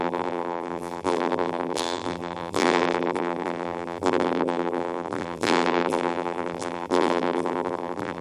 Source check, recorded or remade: remade